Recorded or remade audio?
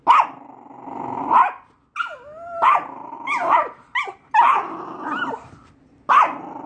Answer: recorded